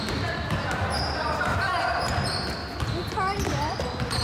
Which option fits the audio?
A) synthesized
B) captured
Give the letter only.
B